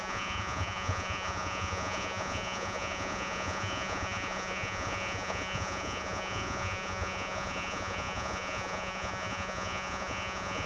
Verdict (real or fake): fake